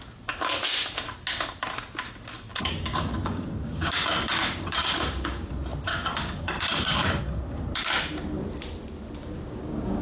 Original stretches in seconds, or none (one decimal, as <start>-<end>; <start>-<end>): 0.0-2.5; 5.5-5.9; 7.2-9.2

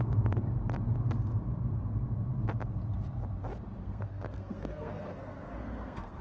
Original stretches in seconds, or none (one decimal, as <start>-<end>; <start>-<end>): 0.0-3.8